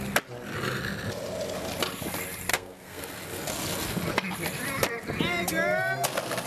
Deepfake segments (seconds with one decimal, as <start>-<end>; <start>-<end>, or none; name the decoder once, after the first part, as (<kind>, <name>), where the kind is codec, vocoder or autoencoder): 2.5-3.0 (codec, SNAC)